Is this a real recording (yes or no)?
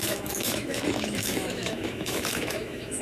no